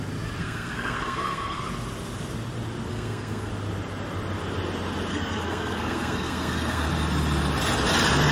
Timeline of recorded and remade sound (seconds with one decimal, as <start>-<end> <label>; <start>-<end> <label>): 0.0-0.4 recorded; 0.4-1.6 remade; 1.6-2.9 recorded; 2.9-3.5 remade; 3.5-5.1 recorded; 5.1-6.9 remade; 6.9-8.3 recorded

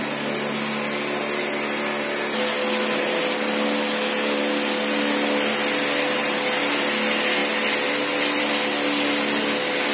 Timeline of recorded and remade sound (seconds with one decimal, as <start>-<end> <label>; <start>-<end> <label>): 0.0-9.9 recorded

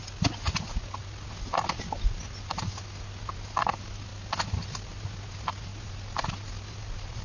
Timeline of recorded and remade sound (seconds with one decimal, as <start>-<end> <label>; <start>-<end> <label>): 0.0-7.2 recorded

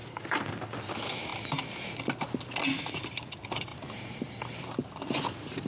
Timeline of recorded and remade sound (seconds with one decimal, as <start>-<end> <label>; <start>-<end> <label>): 0.0-5.7 recorded

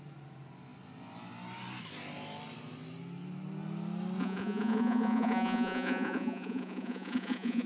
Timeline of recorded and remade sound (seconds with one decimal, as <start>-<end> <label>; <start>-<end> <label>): 0.0-4.2 recorded; 4.2-7.7 remade

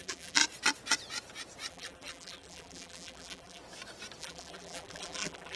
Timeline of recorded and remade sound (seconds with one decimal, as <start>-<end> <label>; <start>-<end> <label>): 0.0-0.4 remade; 0.4-1.7 recorded; 1.7-3.6 remade; 3.6-4.2 recorded; 4.2-5.6 remade

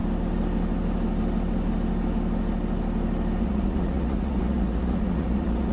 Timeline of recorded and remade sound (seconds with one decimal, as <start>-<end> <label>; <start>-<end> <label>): 0.0-3.4 recorded; 3.4-5.7 remade

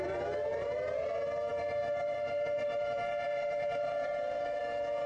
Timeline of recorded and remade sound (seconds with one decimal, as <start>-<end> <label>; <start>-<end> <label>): 0.0-0.5 recorded; 0.5-1.1 remade; 1.1-1.5 recorded; 1.5-4.6 remade; 4.6-5.1 recorded